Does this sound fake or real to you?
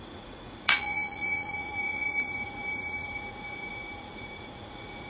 fake